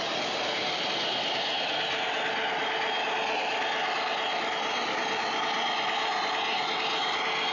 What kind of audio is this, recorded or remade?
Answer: recorded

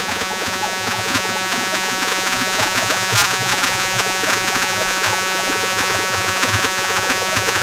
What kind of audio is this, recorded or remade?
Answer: remade